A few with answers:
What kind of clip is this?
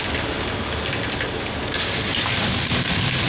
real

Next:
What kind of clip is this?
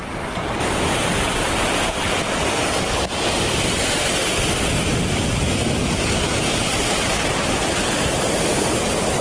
real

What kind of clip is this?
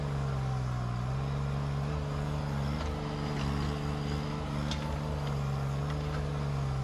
real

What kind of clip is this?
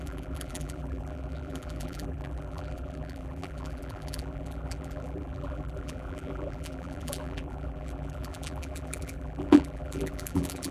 fake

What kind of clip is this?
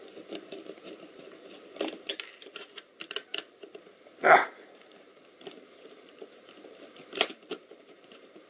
fake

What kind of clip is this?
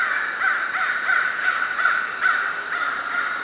real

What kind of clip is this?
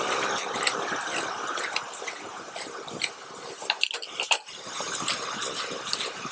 real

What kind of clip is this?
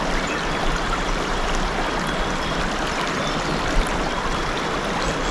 fake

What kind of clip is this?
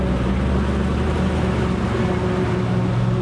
real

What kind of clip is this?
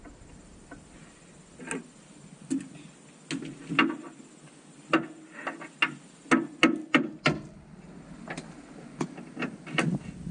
real